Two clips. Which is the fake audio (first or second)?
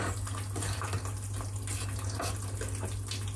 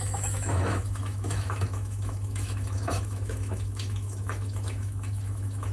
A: second